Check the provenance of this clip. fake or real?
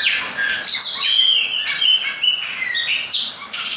real